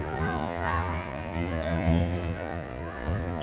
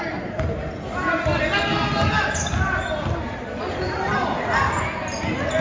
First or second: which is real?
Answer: second